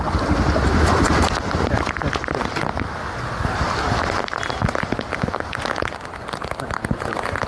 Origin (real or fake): real